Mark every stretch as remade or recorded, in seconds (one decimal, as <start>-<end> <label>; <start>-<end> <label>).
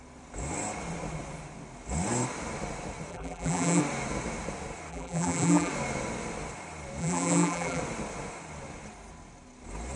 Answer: 0.0-3.1 recorded; 3.1-3.8 remade; 3.8-4.9 recorded; 4.9-5.7 remade; 5.7-7.0 recorded; 7.0-7.8 remade; 7.8-10.0 recorded